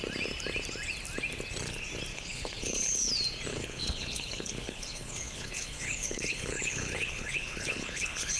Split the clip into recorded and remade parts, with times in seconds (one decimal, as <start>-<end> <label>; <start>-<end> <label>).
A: 0.0-2.1 recorded; 2.1-3.1 remade; 3.1-3.5 recorded; 3.5-8.4 remade